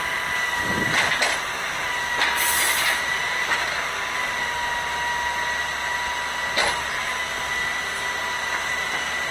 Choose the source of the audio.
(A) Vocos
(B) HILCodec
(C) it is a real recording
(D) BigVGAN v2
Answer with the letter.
C